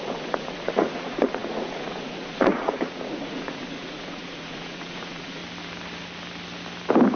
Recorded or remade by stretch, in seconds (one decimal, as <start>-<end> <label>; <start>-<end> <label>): 0.0-5.4 remade; 5.4-7.2 recorded